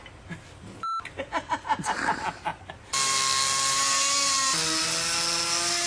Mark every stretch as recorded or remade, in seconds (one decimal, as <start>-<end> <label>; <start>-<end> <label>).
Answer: 0.0-5.9 recorded